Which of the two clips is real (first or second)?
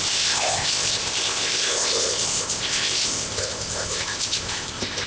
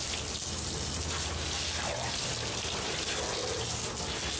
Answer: second